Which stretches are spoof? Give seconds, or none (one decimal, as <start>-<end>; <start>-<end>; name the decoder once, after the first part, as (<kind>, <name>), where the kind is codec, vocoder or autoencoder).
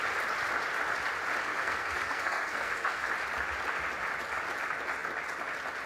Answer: 1.4-3.1 (codec, SNAC)